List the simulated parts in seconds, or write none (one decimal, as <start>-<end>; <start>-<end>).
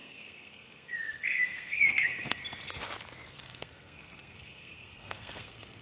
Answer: 0.0-2.4; 3.3-5.8